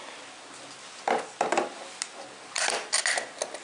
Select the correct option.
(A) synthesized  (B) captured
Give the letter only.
B